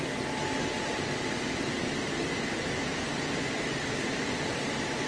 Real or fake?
real